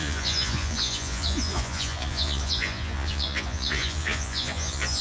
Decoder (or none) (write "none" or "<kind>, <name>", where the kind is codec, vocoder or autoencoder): vocoder, Vocos